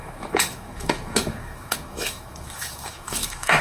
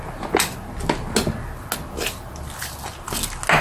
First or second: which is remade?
first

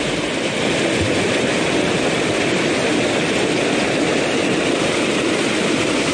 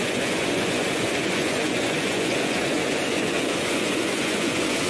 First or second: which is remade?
second